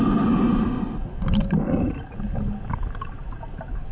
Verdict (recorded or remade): recorded